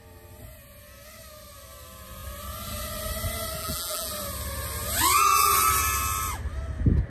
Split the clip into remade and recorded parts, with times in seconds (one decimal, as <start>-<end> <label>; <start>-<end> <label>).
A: 0.0-3.6 recorded; 3.6-4.1 remade; 4.1-7.1 recorded